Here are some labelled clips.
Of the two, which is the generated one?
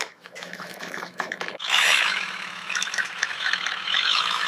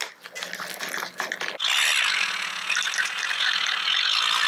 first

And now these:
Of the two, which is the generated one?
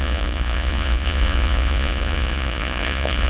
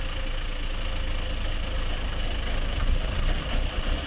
first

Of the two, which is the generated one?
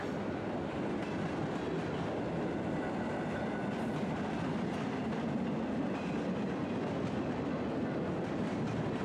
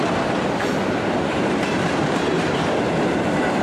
second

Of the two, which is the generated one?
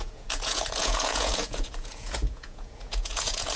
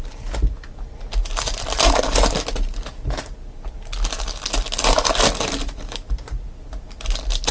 first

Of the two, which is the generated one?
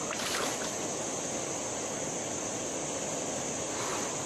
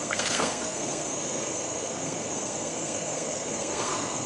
second